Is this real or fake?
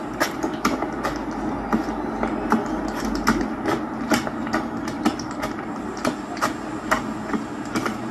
real